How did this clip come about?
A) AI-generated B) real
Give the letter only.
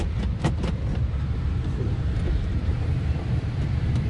A